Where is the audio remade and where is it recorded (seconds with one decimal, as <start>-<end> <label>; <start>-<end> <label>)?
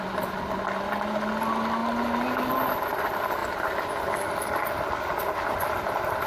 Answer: 0.0-3.4 recorded; 3.4-3.9 remade; 3.9-6.3 recorded